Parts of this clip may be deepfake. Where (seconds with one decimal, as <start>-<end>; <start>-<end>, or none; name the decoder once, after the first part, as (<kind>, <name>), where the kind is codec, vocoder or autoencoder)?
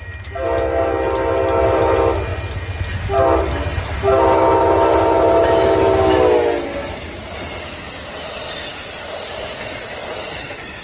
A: 10.0-10.8 (vocoder, BigVGAN v2)